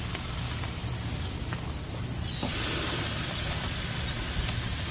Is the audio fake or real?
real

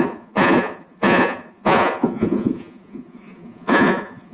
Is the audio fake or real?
fake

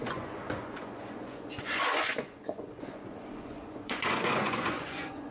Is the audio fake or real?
fake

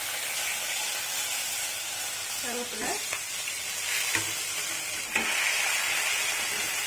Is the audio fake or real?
real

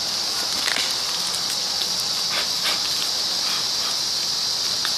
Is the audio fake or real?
real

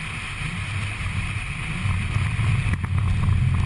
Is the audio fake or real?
real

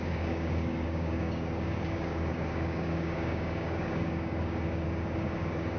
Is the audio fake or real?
fake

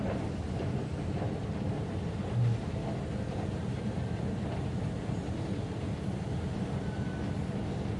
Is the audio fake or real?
real